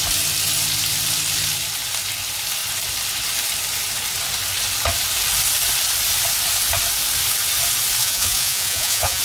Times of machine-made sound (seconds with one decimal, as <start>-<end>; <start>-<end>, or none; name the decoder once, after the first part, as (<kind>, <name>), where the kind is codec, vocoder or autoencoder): 8.0-9.2 (vocoder, Vocos)